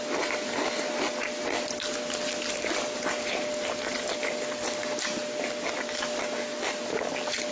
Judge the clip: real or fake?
real